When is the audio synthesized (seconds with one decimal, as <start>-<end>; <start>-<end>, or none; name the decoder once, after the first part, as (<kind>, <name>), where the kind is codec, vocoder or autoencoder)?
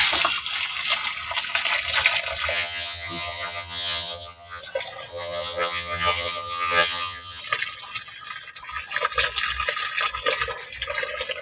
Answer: 2.5-4.6 (vocoder, HiFi-GAN); 5.1-7.4